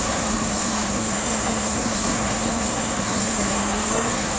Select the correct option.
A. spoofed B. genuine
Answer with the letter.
A